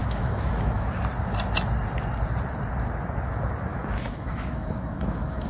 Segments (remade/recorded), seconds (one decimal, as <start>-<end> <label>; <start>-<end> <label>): 0.0-1.0 remade; 1.0-3.7 recorded; 3.7-5.5 remade